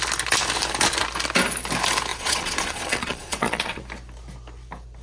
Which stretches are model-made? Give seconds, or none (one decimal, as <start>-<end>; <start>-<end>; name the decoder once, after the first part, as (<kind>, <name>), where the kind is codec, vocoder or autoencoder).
2.1-3.8 (vocoder, Vocos)